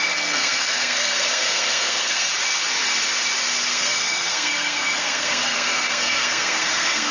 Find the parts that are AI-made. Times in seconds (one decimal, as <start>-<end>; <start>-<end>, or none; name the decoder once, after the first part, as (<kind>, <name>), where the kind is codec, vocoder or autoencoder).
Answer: 0.0-2.3 (codec, SNAC); 3.7-7.1